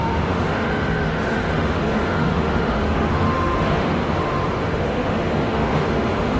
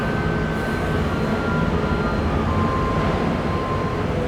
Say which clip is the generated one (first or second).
first